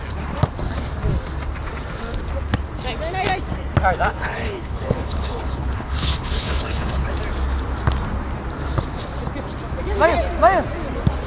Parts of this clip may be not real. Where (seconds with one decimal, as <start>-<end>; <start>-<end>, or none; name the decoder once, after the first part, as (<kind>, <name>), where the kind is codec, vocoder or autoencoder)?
4.1-7.1 (codec, HILCodec)

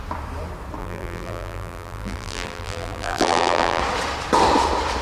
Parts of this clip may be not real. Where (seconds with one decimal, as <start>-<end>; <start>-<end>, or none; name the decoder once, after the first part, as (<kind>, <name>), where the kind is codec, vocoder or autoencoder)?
0.8-3.8 (vocoder, BigVGAN v2)

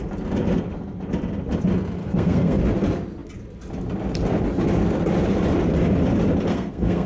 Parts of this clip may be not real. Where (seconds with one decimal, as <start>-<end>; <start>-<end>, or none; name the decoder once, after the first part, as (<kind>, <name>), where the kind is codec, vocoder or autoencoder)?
2.0-2.6 (codec, SNAC); 6.5-7.1